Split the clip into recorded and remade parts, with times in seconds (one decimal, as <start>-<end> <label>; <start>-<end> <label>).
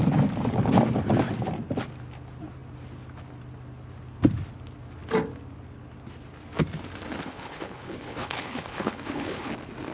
0.0-7.2 recorded; 7.2-9.5 remade; 9.5-9.9 recorded